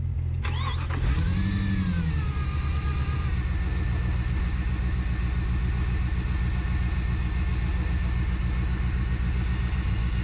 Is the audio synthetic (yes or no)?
no